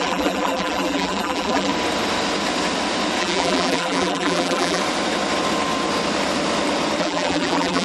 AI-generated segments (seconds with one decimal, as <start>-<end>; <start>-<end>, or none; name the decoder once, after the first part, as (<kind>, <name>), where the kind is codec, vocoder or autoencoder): 0.0-1.7 (vocoder, BigVGAN v2); 3.2-4.8; 7.0-7.8